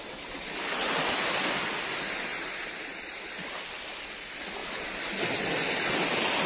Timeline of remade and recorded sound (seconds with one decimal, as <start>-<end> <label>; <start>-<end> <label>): 0.0-6.5 recorded